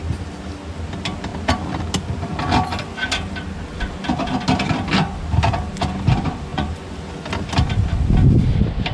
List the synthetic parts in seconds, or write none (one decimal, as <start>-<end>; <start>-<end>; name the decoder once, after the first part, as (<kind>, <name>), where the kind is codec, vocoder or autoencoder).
6.5-7.0 (vocoder, Vocos)